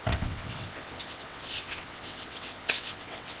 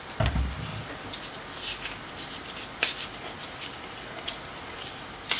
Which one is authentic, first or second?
second